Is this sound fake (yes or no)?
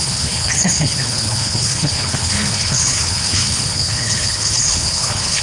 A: yes